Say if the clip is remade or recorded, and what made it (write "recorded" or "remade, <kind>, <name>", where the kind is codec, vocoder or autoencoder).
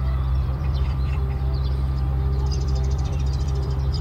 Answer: remade, vocoder, BigVGAN v2